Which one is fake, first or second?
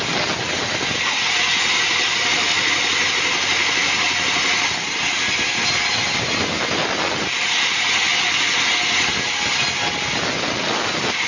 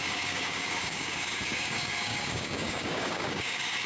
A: second